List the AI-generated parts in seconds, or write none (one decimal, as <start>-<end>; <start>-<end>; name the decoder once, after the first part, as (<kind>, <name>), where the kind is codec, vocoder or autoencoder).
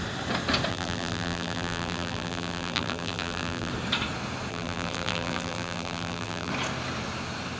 0.7-3.7 (vocoder, BigVGAN v2); 4.5-6.5